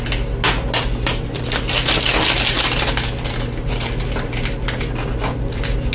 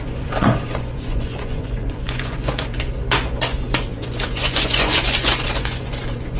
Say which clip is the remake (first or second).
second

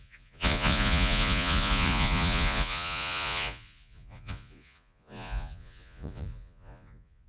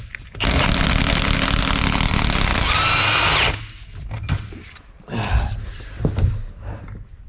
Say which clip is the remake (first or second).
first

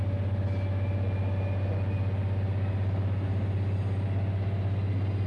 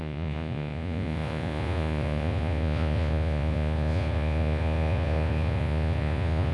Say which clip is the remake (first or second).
second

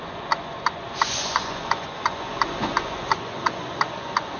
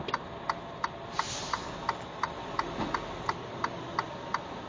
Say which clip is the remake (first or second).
first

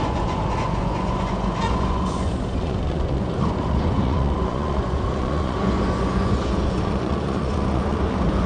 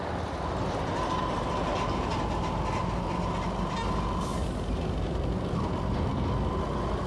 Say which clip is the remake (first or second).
first